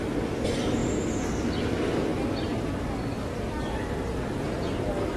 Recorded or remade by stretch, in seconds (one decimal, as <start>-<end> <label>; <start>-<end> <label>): 0.0-5.2 recorded